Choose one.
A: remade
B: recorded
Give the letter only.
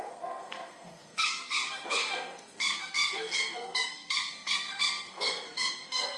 A